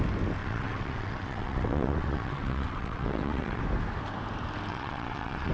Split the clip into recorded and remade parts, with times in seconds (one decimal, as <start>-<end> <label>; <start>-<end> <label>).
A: 0.0-0.4 recorded; 0.4-3.6 remade; 3.6-4.7 recorded; 4.7-5.5 remade